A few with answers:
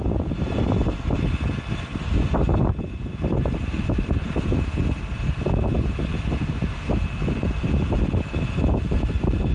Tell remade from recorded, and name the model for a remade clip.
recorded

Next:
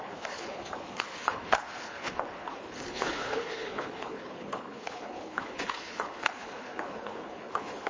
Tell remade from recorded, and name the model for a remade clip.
remade, codec, HILCodec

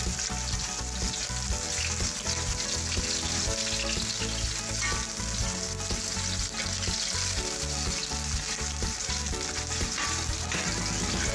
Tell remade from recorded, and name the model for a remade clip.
recorded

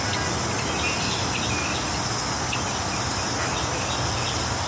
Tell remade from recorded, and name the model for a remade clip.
recorded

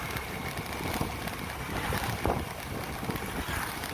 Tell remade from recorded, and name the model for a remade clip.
recorded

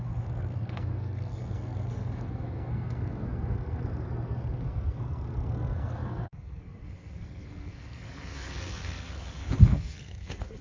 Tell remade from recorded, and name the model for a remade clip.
remade, codec, SNAC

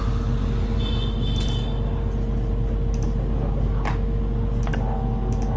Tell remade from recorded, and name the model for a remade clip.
recorded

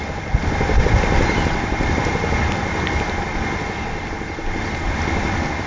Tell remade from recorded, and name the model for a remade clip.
recorded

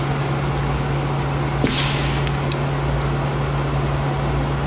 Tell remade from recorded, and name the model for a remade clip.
recorded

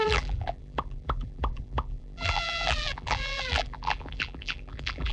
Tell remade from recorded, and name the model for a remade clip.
remade, vocoder, BigVGAN v2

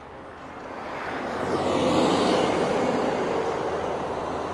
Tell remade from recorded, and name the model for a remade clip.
recorded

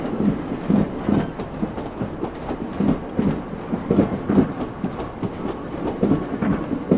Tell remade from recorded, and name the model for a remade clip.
recorded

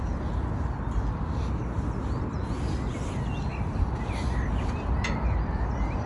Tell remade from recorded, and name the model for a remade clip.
recorded